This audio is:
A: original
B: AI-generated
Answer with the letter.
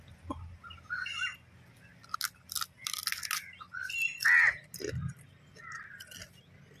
A